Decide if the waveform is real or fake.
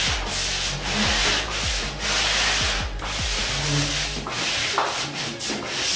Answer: real